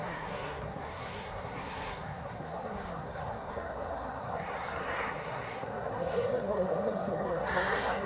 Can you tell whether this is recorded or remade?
remade